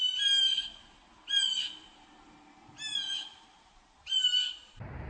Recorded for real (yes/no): yes